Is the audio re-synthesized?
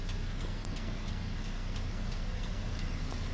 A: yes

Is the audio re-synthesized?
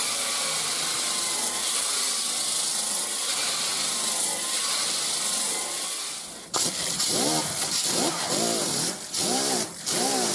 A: yes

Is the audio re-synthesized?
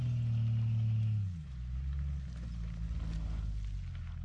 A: no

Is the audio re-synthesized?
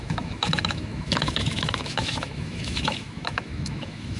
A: yes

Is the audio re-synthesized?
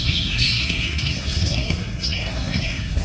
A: yes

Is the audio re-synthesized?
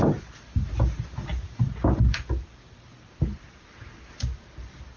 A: no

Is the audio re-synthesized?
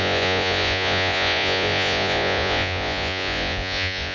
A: yes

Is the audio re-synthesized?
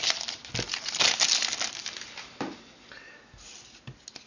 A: no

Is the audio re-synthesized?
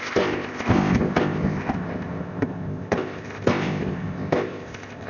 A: yes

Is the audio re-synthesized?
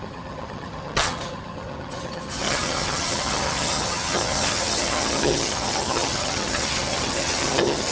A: yes